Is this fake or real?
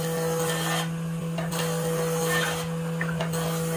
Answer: real